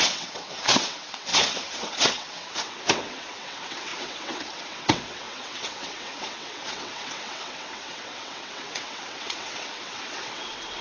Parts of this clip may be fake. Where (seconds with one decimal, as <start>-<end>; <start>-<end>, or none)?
0.0-10.8